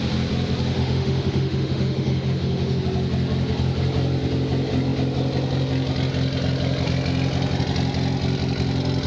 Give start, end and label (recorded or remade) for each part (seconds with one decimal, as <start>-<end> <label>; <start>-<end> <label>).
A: 0.0-0.8 recorded; 0.8-2.8 remade; 2.8-9.1 recorded